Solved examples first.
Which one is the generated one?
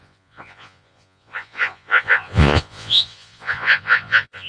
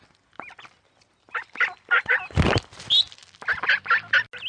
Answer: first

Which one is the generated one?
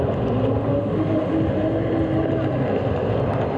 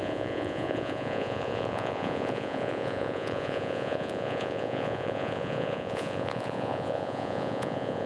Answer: second